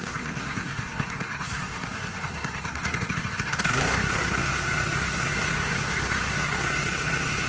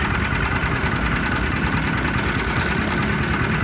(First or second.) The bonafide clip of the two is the second